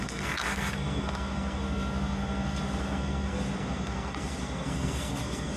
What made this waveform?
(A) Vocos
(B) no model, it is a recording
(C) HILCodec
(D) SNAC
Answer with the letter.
D